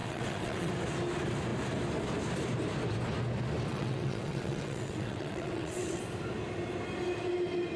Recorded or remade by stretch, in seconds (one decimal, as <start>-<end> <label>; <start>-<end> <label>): 0.0-0.7 remade; 0.7-3.7 recorded; 3.7-6.0 remade; 6.0-7.8 recorded